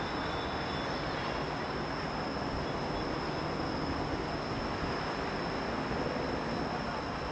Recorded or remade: recorded